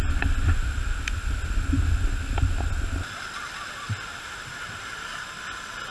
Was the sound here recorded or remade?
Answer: recorded